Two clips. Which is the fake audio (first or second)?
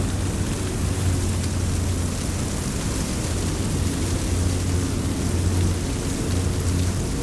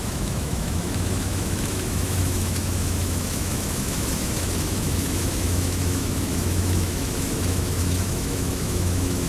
second